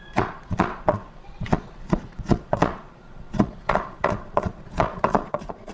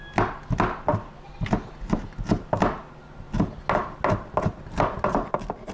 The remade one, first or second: first